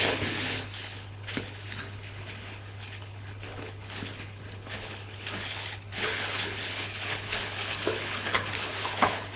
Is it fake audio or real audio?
fake